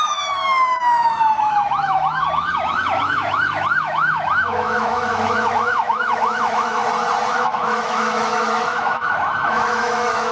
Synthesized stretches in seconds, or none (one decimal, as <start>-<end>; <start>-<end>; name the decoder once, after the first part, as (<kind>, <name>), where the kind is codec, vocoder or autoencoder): 0.0-6.8 (autoencoder, DAC-VAE); 7.3-10.3